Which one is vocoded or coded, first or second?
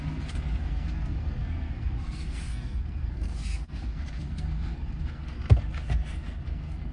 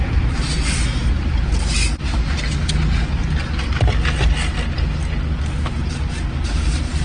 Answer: first